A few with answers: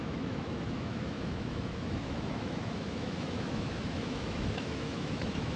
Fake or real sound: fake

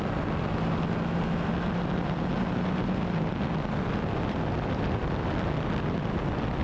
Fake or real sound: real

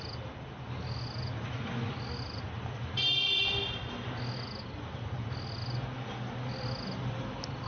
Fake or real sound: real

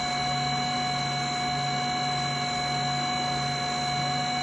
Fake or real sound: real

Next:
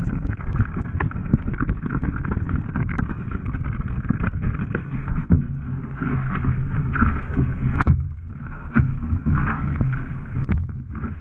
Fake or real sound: fake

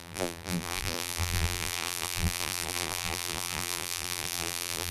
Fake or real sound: fake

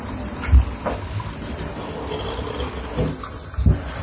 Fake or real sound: real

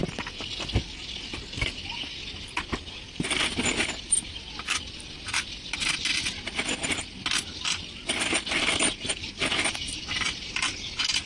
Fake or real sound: real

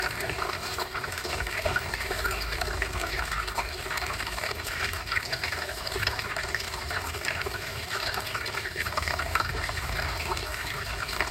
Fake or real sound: fake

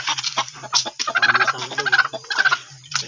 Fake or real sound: real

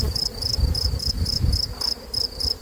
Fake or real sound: real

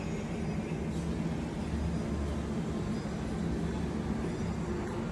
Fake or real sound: real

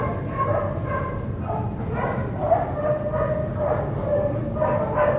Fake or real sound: real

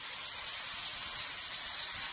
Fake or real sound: real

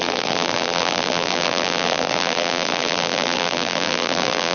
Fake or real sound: fake